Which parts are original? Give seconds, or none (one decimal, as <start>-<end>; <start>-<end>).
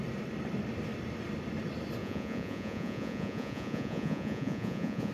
0.0-2.0